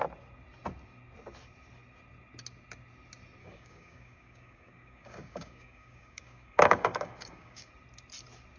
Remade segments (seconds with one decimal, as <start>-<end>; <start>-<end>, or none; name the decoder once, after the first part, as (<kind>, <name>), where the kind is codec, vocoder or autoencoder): 3.4-7.7 (codec, DAC)